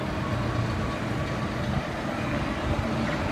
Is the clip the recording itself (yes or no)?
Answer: yes